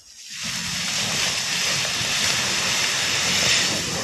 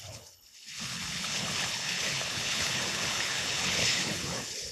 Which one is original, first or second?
first